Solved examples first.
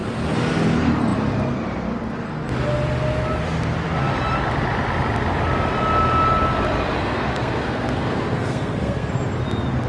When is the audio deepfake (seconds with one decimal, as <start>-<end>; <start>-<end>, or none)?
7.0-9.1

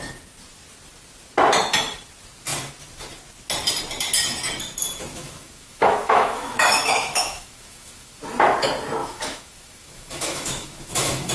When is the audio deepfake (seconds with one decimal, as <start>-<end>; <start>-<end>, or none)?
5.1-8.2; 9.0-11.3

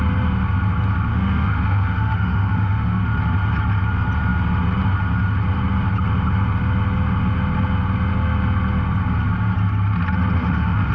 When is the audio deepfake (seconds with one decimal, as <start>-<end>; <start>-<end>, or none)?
1.1-3.0; 10.4-10.9

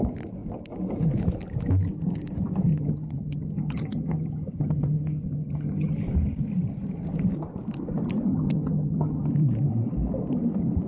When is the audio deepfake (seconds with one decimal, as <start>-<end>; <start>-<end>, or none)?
2.7-5.9; 8.3-9.3